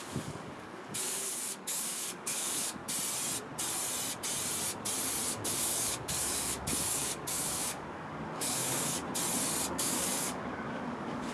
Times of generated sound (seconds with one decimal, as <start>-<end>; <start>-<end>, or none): 0.0-2.8; 5.3-9.0; 9.7-11.3